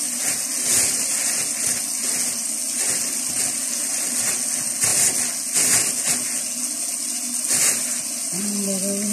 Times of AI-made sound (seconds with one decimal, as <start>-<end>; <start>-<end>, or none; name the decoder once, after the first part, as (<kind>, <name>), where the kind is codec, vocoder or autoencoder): none